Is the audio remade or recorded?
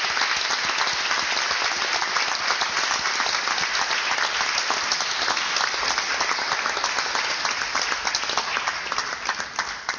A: recorded